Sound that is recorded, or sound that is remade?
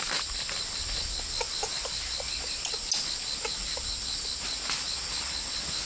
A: recorded